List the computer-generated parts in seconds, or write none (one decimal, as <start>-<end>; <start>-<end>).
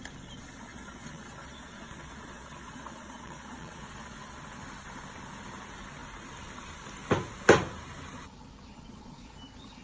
0.7-4.6; 8.7-9.3